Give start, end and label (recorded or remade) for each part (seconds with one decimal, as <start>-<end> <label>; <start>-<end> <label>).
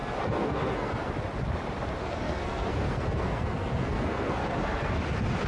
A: 0.0-1.1 remade; 1.1-2.0 recorded; 2.0-5.0 remade; 5.0-5.5 recorded